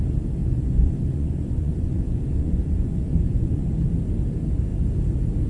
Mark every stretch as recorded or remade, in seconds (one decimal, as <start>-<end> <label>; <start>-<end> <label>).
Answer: 0.0-0.4 recorded; 0.4-3.7 remade; 3.7-5.5 recorded